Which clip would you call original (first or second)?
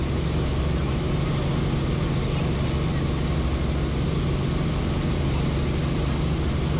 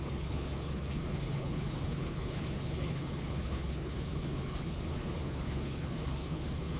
first